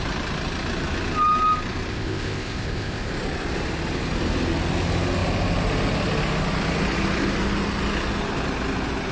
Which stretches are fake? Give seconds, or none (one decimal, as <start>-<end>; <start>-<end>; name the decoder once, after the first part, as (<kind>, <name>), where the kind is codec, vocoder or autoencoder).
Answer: 1.9-3.1 (codec, ZipCodec)